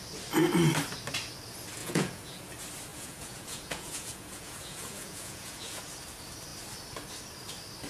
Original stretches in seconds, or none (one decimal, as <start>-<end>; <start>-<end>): 0.0-1.8; 2.4-2.9; 5.8-7.9